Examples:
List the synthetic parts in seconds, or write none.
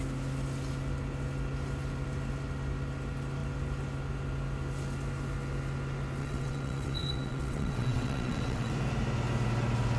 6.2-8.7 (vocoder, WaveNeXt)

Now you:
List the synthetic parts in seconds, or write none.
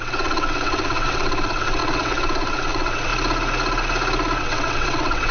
0.0-3.1 (vocoder, WaveNeXt); 4.4-5.3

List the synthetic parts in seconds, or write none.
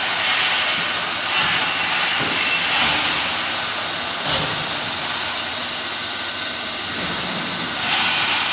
none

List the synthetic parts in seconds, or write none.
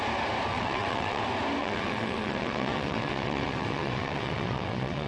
0.5-1.2 (vocoder, WaveNeXt); 1.6-5.1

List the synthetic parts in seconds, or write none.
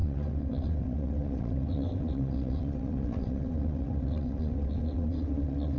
0.0-5.8 (vocoder, WaveNeXt)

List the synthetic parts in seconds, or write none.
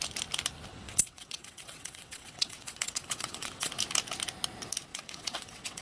0.7-3.7 (vocoder, WaveNeXt); 4.9-5.8